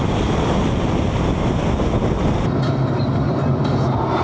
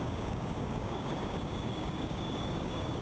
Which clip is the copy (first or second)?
second